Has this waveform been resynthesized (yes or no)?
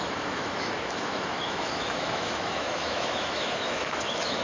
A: yes